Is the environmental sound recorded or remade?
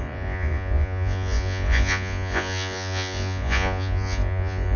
remade